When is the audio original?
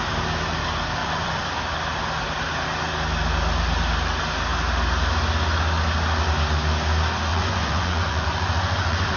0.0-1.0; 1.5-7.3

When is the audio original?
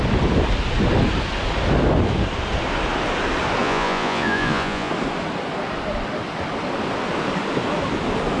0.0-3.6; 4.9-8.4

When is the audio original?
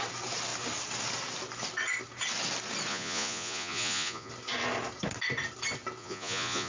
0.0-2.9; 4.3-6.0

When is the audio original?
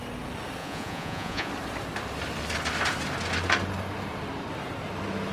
0.0-0.6; 1.5-5.3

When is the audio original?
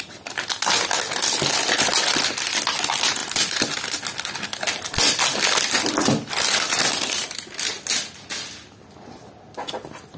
0.0-10.2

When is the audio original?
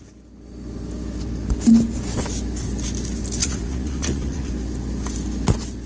0.0-3.4; 4.5-5.9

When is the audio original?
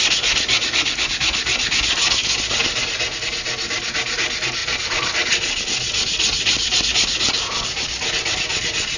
0.0-4.6; 5.6-9.0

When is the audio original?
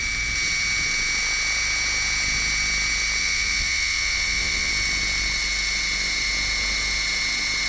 0.0-3.2; 4.7-7.7